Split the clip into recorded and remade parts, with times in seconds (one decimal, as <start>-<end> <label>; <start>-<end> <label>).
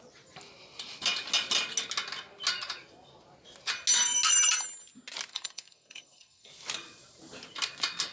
0.0-5.3 recorded; 5.3-6.5 remade; 6.5-8.1 recorded